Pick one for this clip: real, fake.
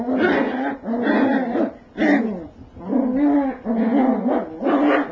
real